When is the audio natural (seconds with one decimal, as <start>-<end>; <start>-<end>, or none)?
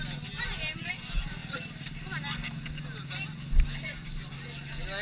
0.0-5.0